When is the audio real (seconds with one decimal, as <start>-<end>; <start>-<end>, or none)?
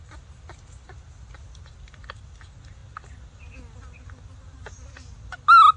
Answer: 0.0-5.8